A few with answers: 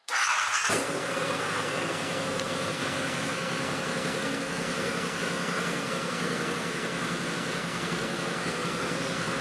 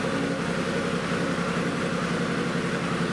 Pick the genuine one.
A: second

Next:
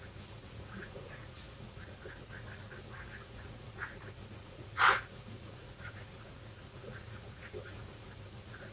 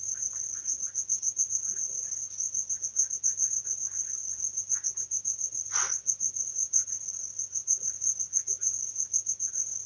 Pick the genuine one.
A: second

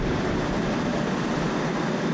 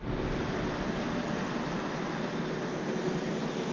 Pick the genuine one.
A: second